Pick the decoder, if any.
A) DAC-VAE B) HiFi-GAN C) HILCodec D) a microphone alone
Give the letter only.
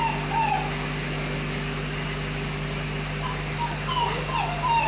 D